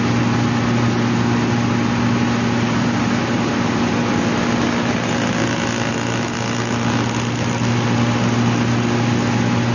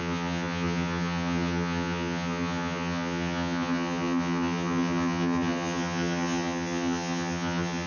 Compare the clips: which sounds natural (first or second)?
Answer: first